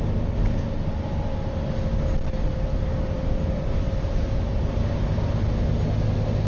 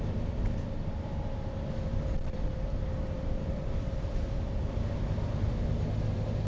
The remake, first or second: second